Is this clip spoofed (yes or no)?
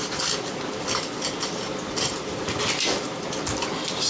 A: no